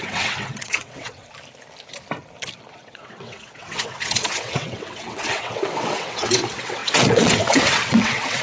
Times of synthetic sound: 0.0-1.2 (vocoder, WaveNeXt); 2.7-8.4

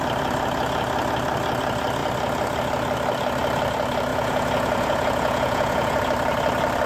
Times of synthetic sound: 4.1-6.0 (vocoder, Vocos)

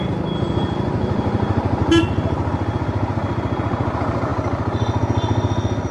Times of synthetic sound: 1.8-2.8 (vocoder, BigVGAN v2)

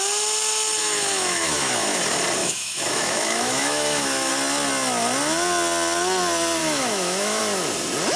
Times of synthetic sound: 0.8-2.0 (autoencoder, DAC-VAE); 2.4-4.3; 6.6-7.4

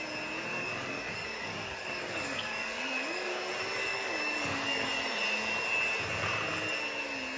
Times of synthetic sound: 0.5-3.5 (codec, DAC); 3.9-5.0

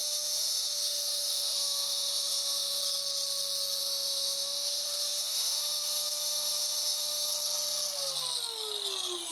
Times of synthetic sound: 0.0-2.8 (autoencoder, DAC-VAE); 3.8-7.3

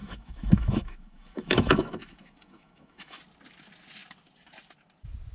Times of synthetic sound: 0.0-3.2 (autoencoder, DAC-VAE)

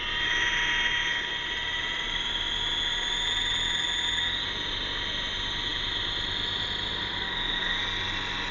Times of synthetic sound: none